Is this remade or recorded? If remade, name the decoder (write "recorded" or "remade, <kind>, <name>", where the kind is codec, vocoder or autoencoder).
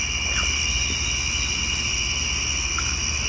recorded